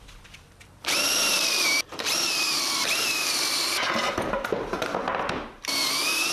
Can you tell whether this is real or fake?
fake